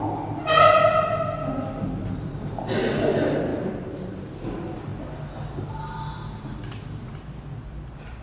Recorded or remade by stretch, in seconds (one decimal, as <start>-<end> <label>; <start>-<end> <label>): 0.0-8.2 recorded